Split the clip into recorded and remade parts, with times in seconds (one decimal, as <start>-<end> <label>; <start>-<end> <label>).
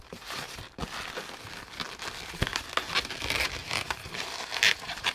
0.0-0.8 remade; 0.8-3.0 recorded; 3.0-5.1 remade